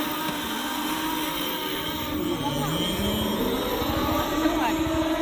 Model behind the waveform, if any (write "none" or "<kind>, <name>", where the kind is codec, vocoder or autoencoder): none